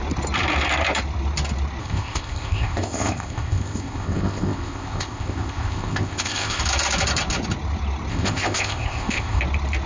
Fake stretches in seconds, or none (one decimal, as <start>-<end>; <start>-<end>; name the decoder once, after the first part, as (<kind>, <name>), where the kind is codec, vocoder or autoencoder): 1.8-6.6 (codec, ZipCodec); 8.1-9.4